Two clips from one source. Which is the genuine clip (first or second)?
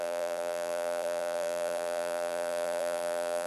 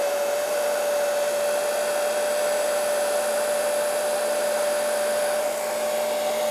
second